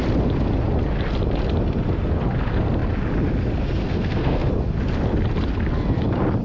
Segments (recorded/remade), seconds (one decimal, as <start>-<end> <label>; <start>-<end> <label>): 0.0-3.8 recorded; 3.8-4.5 remade; 4.5-6.4 recorded